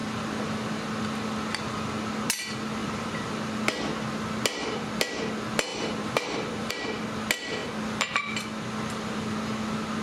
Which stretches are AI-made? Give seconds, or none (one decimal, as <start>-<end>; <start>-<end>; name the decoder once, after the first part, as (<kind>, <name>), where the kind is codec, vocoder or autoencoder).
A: 2.8-3.3 (vocoder, BigVGAN v2); 5.7-6.7